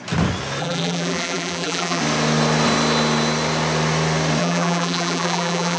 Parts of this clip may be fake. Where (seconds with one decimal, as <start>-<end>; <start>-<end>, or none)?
0.6-2.0; 4.4-5.8